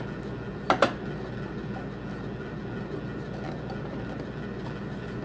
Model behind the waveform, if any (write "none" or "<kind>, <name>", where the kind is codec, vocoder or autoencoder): none